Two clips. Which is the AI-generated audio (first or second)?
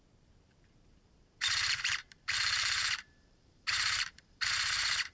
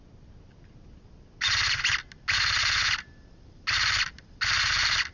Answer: first